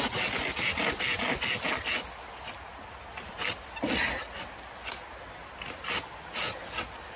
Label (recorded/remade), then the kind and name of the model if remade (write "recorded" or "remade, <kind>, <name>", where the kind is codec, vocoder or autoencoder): recorded